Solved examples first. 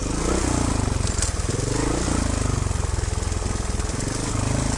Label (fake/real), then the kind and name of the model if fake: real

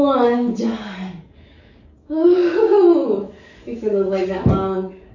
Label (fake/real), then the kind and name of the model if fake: fake, codec, DAC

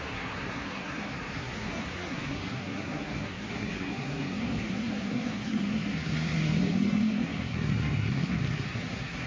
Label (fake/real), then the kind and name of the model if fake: fake, codec, SNAC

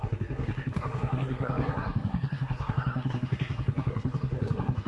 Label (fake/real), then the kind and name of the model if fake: fake, codec, SNAC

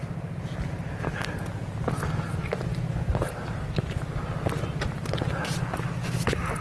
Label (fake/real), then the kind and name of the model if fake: real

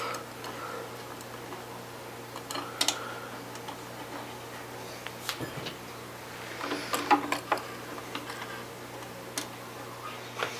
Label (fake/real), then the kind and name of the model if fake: real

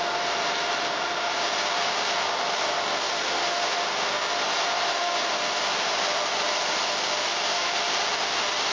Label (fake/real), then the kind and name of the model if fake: real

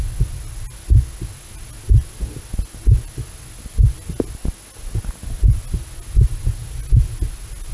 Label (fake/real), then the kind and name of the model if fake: real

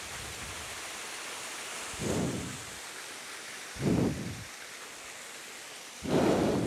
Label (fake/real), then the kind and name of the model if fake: real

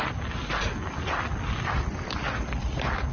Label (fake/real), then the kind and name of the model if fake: real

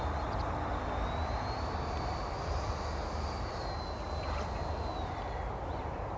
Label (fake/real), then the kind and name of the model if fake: real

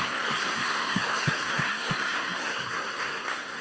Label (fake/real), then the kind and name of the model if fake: fake, codec, SNAC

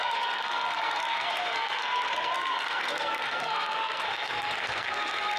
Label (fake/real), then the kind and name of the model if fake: fake, codec, SNAC